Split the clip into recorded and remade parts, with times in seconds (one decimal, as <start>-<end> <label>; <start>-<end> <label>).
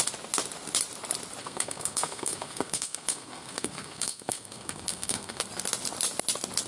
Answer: 0.0-1.4 recorded; 1.4-5.4 remade; 5.4-6.7 recorded